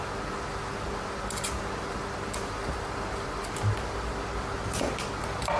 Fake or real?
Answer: real